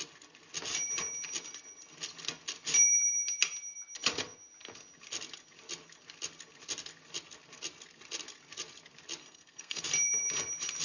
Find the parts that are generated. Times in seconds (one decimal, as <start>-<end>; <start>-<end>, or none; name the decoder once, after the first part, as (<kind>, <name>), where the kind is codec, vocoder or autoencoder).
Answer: 9.2-9.8 (codec, SNAC)

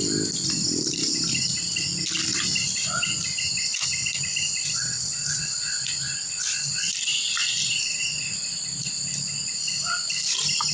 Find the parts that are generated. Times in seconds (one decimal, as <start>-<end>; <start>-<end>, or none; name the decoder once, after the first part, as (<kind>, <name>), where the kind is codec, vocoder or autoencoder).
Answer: none

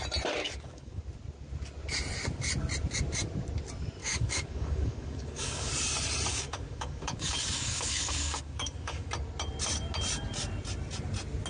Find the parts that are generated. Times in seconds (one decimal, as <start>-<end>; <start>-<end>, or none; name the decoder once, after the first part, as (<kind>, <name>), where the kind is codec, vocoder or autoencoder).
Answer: 0.4-1.0 (codec, DAC); 4.0-5.7; 6.3-9.1